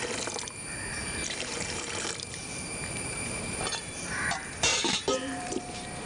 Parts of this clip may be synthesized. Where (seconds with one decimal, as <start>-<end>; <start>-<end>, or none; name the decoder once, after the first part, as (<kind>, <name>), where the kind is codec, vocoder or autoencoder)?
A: 0.9-4.1 (vocoder, BigVGAN v2); 4.7-6.1